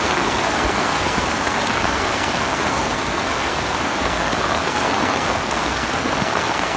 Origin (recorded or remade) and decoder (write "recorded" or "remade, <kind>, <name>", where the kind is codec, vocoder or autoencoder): remade, codec, SNAC